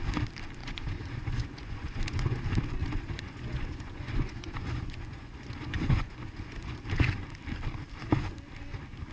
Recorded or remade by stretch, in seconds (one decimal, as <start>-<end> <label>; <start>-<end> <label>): 0.0-0.6 recorded; 0.6-2.4 remade; 2.4-2.8 recorded; 2.8-6.8 remade; 6.8-9.1 recorded